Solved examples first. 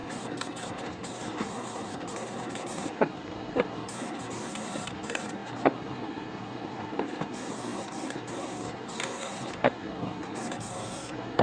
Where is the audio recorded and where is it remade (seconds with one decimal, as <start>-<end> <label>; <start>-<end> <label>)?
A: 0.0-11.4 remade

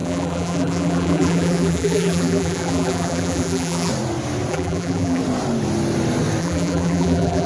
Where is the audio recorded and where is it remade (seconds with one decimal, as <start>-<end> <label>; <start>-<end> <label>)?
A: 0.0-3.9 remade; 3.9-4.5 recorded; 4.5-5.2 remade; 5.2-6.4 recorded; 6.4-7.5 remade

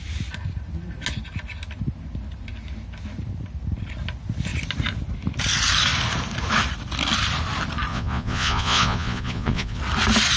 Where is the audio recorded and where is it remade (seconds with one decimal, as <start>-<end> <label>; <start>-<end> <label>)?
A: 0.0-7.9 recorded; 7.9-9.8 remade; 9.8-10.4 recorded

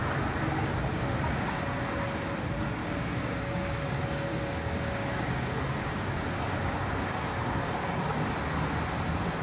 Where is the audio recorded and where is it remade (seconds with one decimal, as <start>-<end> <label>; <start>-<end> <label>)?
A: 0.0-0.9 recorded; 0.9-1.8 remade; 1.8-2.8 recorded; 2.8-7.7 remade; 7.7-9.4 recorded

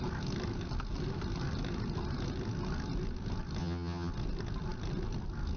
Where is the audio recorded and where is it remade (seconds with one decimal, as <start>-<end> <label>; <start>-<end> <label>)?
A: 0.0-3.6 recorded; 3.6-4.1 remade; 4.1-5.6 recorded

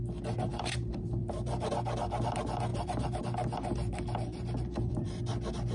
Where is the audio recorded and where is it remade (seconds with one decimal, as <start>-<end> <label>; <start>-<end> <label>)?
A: 0.0-0.5 recorded; 0.5-1.7 remade; 1.7-2.7 recorded; 2.7-3.2 remade; 3.2-3.7 recorded; 3.7-5.2 remade; 5.2-5.7 recorded